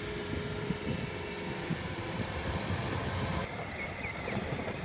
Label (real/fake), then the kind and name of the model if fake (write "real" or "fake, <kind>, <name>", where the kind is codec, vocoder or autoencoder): fake, vocoder, BigVGAN v2